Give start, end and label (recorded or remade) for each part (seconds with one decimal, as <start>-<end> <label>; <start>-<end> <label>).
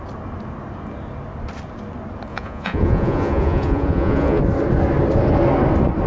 0.0-2.3 recorded; 2.3-4.4 remade; 4.4-6.1 recorded